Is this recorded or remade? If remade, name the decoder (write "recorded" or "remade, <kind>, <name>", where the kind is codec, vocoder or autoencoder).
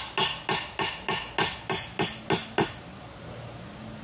recorded